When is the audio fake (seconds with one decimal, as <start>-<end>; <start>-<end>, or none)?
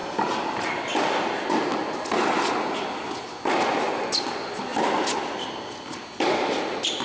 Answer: none